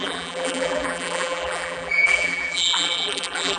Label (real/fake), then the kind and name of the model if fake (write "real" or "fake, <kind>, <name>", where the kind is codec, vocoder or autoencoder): fake, vocoder, BigVGAN v2